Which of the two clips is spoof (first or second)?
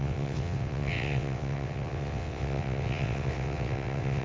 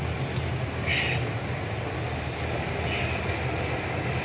first